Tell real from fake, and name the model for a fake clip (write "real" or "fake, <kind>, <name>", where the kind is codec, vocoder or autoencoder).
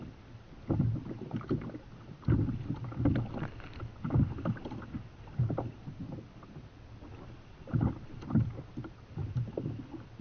real